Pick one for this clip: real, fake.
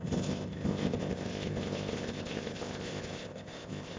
fake